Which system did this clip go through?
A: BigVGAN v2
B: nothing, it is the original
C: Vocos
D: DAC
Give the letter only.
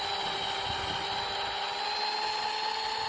B